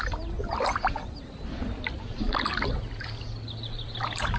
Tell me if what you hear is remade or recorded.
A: recorded